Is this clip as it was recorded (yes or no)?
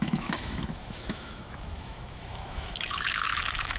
no